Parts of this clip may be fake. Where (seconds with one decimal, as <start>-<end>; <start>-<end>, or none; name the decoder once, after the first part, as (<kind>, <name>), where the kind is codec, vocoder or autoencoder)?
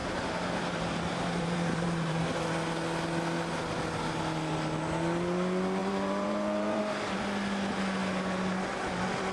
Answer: 0.0-2.3 (vocoder, BigVGAN v2); 5.8-6.8